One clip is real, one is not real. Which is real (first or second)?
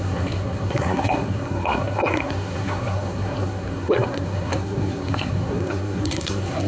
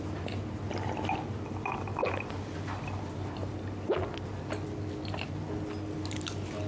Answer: second